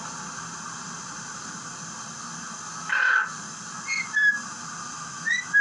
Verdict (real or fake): real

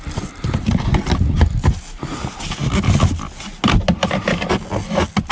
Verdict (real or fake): real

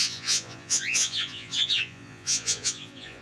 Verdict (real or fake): fake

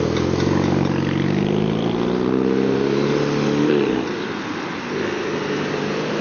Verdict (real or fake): real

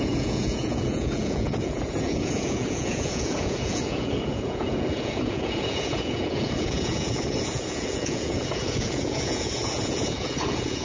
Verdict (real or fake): fake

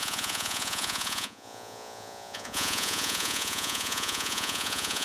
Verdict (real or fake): fake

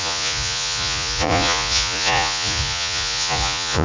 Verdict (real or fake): fake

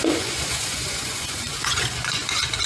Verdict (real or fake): fake